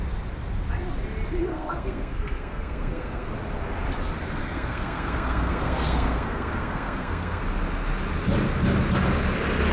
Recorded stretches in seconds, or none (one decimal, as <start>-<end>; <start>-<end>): 0.0-1.5; 3.3-4.4; 7.4-9.7